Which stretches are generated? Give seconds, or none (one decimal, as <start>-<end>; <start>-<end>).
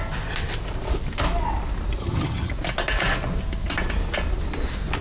2.0-2.5